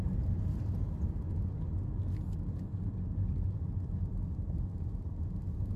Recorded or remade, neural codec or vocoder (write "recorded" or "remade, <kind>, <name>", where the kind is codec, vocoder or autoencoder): recorded